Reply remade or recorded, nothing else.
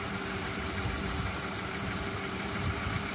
remade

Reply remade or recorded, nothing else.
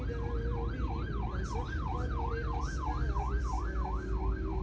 recorded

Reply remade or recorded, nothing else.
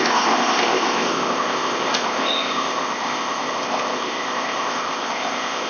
remade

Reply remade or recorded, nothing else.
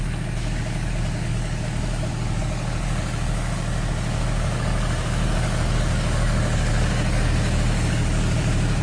remade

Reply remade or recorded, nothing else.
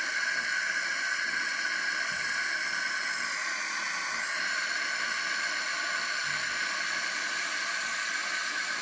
recorded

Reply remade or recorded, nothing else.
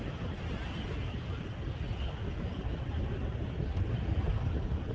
recorded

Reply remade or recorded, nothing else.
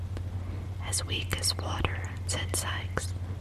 recorded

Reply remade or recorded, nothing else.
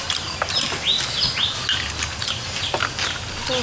recorded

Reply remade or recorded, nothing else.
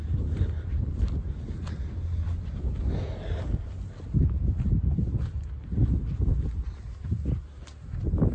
recorded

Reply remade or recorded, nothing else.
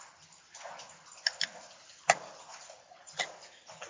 recorded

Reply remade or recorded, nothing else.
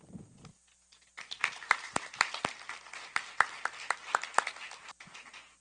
recorded